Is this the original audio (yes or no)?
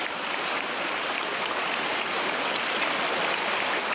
yes